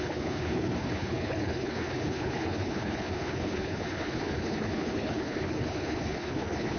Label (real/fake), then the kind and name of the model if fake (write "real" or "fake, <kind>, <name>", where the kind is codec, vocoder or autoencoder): fake, codec, HILCodec